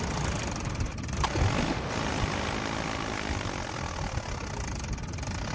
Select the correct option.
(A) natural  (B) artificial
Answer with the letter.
A